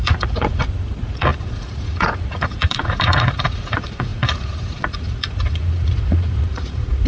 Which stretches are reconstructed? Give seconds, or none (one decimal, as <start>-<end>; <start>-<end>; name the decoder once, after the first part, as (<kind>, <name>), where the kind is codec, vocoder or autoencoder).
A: 0.0-7.1 (vocoder, Vocos)